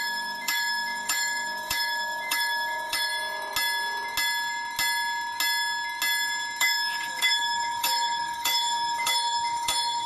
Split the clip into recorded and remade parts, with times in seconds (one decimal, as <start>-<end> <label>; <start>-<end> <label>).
0.0-3.1 remade; 3.1-6.6 recorded; 6.6-10.1 remade